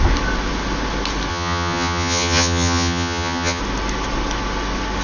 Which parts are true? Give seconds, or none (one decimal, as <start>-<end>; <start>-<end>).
0.0-1.3; 3.6-5.0